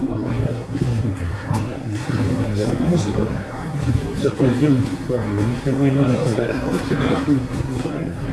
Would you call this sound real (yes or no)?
no